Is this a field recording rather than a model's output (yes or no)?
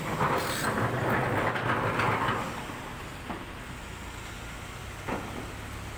yes